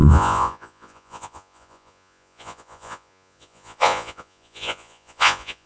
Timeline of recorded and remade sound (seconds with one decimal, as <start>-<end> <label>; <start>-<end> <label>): 0.0-5.7 remade